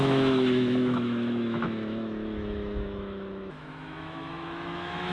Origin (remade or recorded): remade